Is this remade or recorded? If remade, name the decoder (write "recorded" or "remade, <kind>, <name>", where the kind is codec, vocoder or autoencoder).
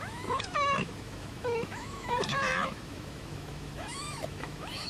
remade, autoencoder, DAC-VAE